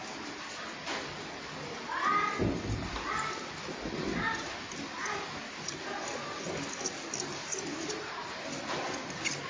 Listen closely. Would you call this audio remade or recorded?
recorded